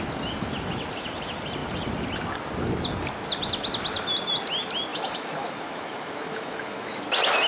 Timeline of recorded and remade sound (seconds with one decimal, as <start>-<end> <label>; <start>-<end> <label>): 0.0-4.9 recorded; 4.9-7.0 remade; 7.0-7.5 recorded